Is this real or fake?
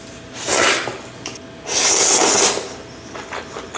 real